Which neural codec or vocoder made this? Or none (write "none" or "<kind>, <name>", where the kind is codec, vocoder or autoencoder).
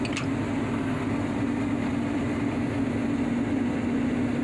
none